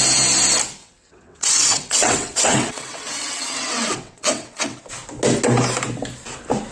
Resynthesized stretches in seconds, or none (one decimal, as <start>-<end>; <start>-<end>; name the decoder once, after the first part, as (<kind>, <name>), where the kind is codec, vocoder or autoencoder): 0.8-4.8 (vocoder, WaveNeXt)